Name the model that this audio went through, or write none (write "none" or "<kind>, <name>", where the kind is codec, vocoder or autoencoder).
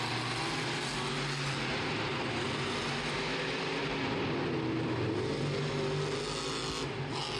none